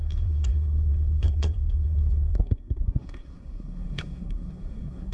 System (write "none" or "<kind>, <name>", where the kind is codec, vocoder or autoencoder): codec, SNAC